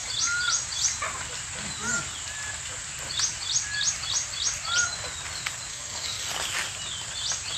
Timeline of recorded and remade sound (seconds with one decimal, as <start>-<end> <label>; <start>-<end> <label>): 0.0-5.7 recorded; 5.7-6.3 remade; 6.3-7.6 recorded